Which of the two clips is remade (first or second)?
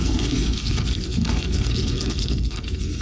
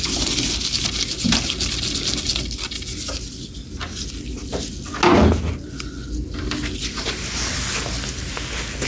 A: first